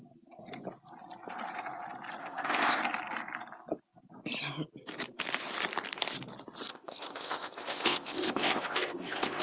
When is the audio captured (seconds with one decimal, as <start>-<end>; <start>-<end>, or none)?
0.0-2.2; 2.8-6.7